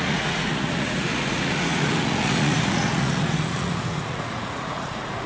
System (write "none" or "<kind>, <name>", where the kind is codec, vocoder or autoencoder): vocoder, Vocos